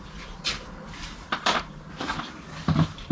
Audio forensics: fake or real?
fake